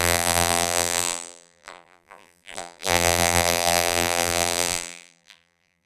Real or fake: fake